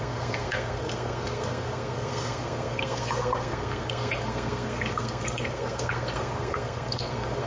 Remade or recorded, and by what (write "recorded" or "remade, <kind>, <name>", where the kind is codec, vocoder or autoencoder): remade, codec, SNAC